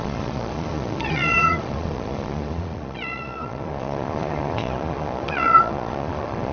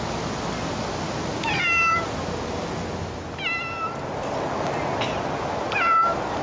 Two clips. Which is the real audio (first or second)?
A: second